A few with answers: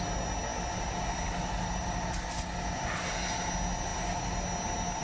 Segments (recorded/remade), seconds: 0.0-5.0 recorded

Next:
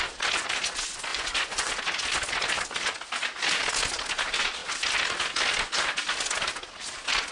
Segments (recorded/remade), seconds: 0.0-1.1 recorded; 1.1-1.7 remade; 1.7-7.3 recorded

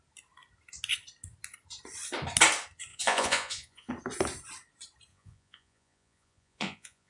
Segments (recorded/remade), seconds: 0.0-2.9 recorded; 2.9-3.9 remade; 3.9-5.1 recorded; 5.1-7.1 remade

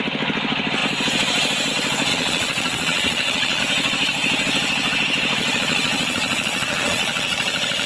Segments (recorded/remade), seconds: 0.0-2.1 recorded; 2.1-3.6 remade; 3.6-5.4 recorded; 5.4-7.9 remade

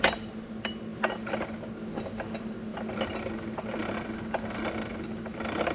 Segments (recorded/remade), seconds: 0.0-5.7 recorded

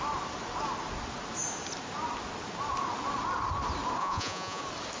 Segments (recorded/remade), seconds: 0.0-4.0 recorded; 4.0-4.6 remade; 4.6-5.0 recorded